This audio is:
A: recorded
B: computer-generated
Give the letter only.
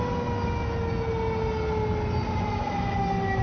A